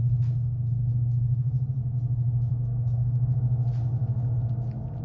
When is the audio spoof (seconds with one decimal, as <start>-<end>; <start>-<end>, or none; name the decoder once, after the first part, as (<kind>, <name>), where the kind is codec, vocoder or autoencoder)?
0.7-1.6 (codec, SNAC); 2.5-3.4